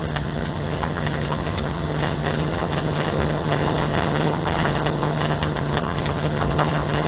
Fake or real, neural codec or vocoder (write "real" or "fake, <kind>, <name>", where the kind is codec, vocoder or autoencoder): fake, vocoder, HiFi-GAN